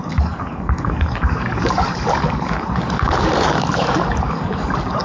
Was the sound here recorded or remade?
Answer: remade